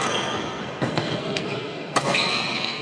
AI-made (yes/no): yes